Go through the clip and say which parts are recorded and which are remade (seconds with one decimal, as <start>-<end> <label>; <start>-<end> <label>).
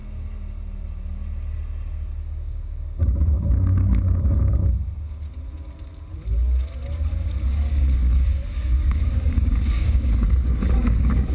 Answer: 0.0-2.2 recorded; 2.2-4.6 remade; 4.6-7.5 recorded; 7.5-11.3 remade